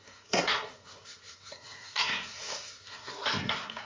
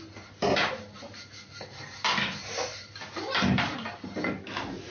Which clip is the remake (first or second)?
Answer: first